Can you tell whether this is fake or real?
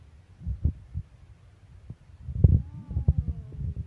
real